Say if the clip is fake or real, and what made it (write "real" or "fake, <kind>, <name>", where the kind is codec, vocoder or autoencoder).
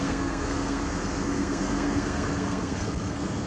fake, codec, SNAC